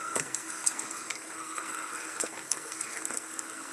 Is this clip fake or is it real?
fake